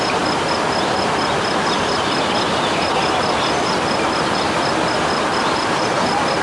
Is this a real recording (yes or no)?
yes